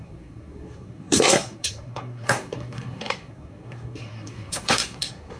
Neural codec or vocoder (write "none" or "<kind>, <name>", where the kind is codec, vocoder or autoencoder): codec, SNAC